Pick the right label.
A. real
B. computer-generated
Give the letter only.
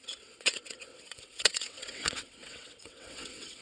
B